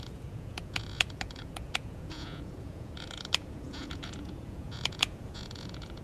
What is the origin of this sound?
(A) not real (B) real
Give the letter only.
A